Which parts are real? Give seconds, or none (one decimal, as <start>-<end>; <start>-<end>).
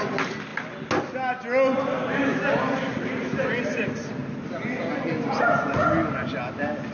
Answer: 0.0-6.9